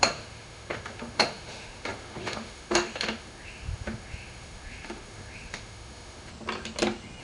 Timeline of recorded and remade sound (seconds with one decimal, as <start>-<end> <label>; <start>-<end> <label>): 0.0-6.3 remade; 6.3-7.2 recorded